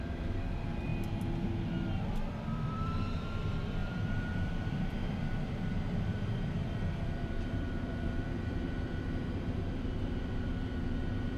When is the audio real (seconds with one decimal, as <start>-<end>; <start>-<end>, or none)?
0.9-2.0

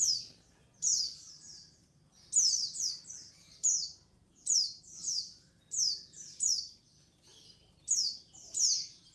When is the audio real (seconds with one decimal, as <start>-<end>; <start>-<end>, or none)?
1.8-2.9

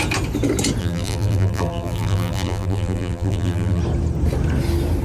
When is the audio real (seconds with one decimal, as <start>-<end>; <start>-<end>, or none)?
0.0-0.8; 3.8-5.0

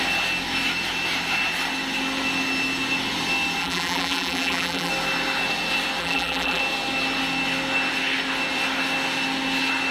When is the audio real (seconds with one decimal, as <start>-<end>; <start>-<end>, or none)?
0.0-3.6; 4.9-6.0; 6.6-9.9